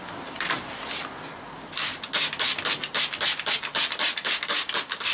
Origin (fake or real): real